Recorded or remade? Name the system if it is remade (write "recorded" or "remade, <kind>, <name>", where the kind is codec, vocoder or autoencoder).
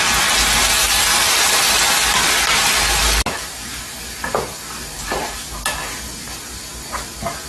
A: recorded